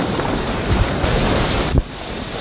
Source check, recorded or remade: remade